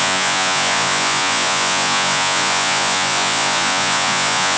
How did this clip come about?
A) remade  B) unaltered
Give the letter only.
A